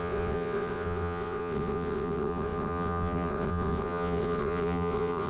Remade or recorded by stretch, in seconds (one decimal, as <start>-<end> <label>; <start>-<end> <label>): 0.0-5.3 remade